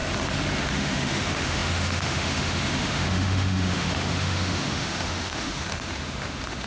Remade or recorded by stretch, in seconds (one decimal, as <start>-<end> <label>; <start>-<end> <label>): 0.0-0.6 recorded; 0.6-6.7 remade